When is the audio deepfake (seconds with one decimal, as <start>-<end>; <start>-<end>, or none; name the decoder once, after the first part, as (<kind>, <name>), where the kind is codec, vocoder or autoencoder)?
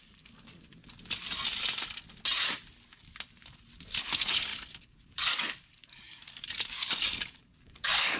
0.0-0.8 (codec, DAC); 4.0-8.2